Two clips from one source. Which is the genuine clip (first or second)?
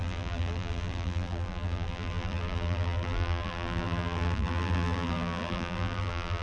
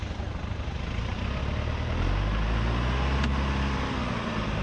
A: second